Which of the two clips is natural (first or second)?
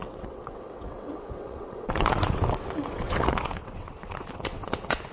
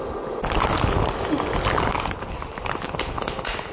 second